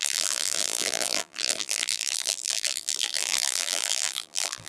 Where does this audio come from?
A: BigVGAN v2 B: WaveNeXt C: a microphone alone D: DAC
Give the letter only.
A